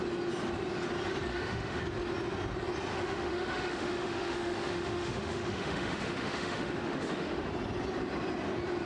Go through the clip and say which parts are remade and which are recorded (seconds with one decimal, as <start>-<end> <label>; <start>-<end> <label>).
0.0-1.3 recorded; 1.3-1.8 remade; 1.8-2.9 recorded; 2.9-7.5 remade; 7.5-8.9 recorded